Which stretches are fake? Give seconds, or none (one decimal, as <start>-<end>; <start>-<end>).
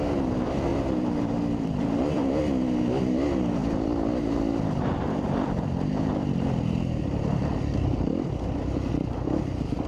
0.7-2.4; 3.6-8.9